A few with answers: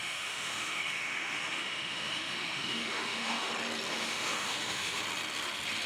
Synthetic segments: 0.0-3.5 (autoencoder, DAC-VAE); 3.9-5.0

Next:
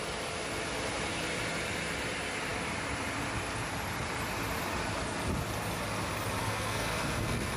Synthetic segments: 6.4-7.6 (codec, SNAC)